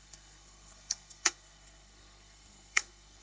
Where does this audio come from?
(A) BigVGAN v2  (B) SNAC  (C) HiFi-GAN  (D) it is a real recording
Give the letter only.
B